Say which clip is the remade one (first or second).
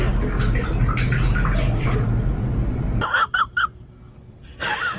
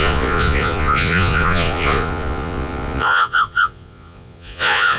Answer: second